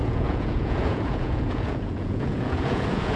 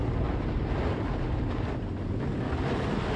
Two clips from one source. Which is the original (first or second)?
second